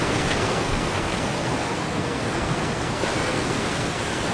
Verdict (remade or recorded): remade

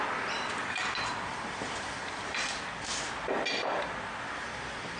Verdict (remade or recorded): recorded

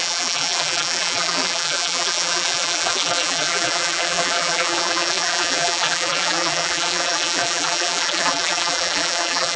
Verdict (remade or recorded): remade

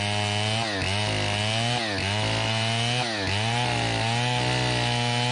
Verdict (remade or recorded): recorded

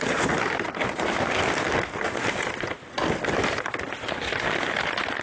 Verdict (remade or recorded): recorded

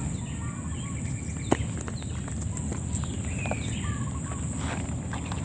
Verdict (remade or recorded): recorded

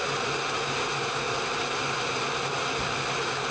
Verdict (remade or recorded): recorded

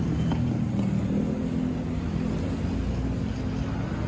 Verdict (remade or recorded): recorded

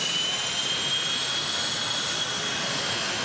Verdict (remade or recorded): recorded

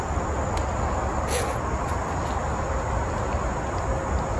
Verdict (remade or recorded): recorded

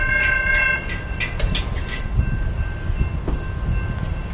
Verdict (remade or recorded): recorded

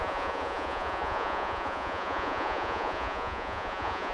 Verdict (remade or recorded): remade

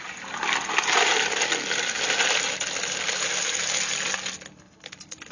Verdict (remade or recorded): recorded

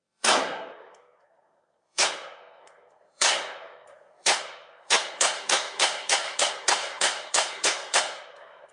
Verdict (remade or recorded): remade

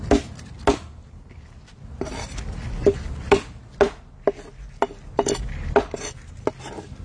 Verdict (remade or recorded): recorded